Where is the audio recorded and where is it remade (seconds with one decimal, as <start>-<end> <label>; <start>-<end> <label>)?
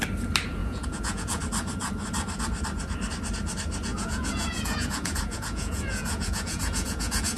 0.0-0.6 recorded; 0.6-1.4 remade; 1.4-3.9 recorded; 3.9-7.4 remade